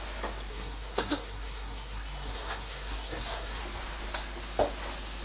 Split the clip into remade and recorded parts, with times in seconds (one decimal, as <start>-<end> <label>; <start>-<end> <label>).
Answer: 0.0-0.5 recorded; 0.5-3.6 remade; 3.6-5.2 recorded